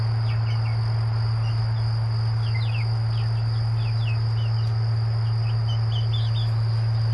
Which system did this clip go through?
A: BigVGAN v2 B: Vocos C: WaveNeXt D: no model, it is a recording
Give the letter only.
D